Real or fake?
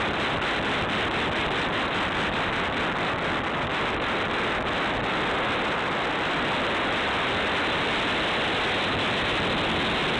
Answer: real